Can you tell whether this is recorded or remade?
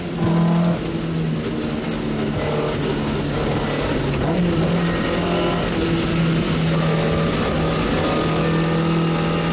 recorded